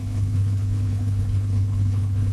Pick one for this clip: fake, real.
fake